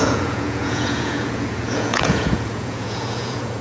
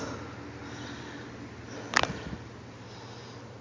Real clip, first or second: second